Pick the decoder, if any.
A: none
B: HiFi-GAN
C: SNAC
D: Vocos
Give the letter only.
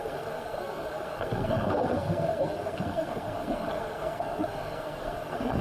C